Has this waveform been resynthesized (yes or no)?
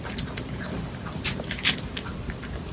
no